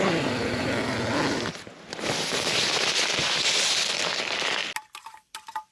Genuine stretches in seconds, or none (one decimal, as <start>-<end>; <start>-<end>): 0.0-5.7